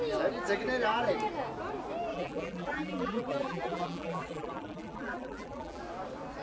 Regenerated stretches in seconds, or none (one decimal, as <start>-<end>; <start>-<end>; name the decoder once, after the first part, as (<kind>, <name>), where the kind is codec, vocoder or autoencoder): 2.1-5.8 (vocoder, BigVGAN v2)